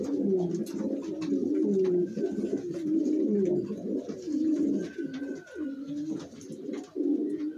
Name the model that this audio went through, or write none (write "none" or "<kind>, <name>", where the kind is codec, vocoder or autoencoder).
none